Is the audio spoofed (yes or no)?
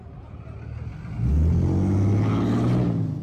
no